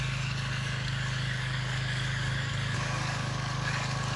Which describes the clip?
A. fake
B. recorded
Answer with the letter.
A